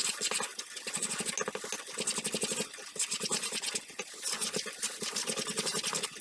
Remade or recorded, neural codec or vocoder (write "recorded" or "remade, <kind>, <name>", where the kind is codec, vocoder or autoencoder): recorded